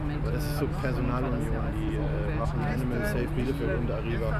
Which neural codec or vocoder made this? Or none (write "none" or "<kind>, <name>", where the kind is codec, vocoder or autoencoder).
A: none